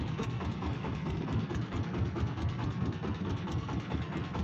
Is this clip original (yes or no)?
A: no